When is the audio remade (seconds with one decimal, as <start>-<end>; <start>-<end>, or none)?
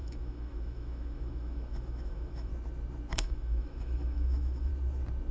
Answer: 0.0-2.5; 3.1-4.7